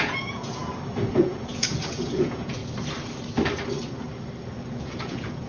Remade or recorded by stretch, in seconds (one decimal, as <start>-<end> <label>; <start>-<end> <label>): 0.0-0.6 remade; 0.6-1.1 recorded; 1.1-2.6 remade; 2.6-4.7 recorded; 4.7-5.5 remade